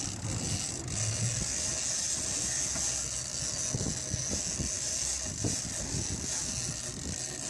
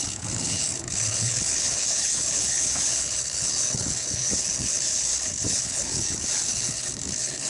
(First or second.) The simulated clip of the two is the second